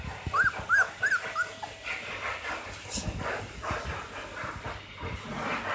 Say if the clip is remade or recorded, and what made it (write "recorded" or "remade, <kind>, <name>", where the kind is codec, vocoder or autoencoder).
recorded